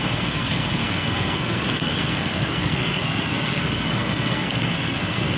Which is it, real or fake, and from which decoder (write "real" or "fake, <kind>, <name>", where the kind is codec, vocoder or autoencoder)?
fake, codec, SNAC